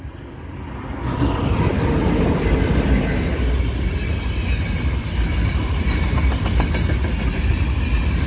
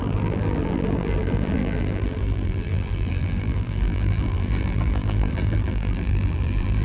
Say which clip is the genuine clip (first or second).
first